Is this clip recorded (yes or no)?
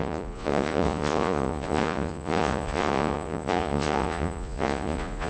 no